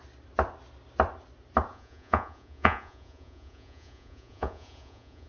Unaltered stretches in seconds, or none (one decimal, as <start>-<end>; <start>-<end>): 0.0-1.7